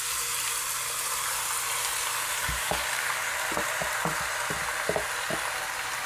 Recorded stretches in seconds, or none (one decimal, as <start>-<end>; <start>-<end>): 0.0-2.4; 3.3-6.1